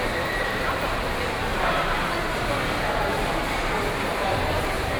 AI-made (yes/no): yes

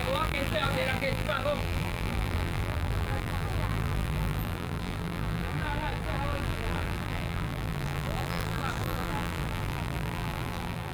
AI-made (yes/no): yes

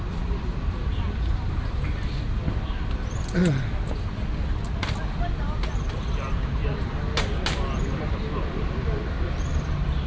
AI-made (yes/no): no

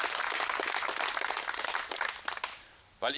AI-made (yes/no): no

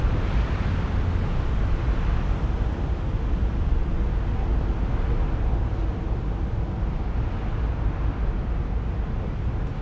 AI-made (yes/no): no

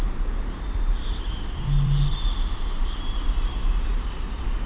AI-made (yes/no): yes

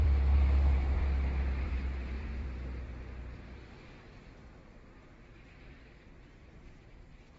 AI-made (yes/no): yes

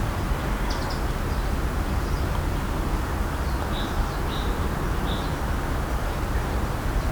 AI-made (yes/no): no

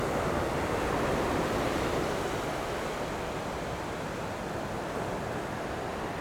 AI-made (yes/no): no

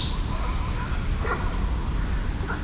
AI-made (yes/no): no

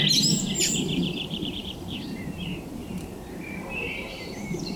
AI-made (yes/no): yes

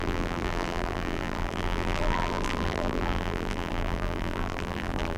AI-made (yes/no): yes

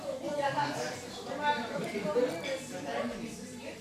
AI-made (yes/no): yes